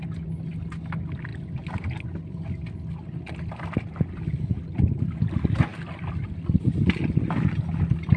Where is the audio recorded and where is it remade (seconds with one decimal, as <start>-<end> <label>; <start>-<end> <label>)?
0.0-8.2 recorded

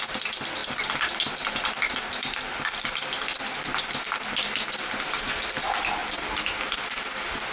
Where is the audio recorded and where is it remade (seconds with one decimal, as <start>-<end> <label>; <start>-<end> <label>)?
0.0-7.5 recorded

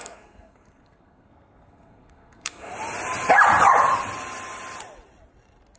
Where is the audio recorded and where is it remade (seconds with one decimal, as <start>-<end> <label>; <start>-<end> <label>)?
0.0-2.7 remade; 2.7-5.8 recorded

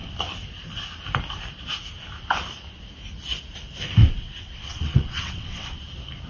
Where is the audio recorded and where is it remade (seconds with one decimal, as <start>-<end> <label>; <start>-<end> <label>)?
0.0-4.0 recorded; 4.0-5.8 remade; 5.8-6.3 recorded